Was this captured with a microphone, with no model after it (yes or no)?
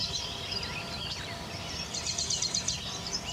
yes